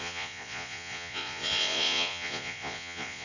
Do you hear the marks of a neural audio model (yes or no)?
yes